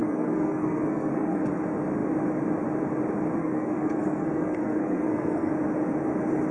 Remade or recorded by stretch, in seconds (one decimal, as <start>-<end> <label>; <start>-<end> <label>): 0.0-1.5 remade; 1.5-3.4 recorded; 3.4-5.5 remade; 5.5-6.5 recorded